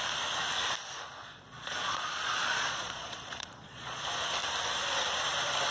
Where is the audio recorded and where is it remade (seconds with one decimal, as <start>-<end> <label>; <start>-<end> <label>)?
0.0-1.2 recorded; 1.2-4.0 remade; 4.0-5.7 recorded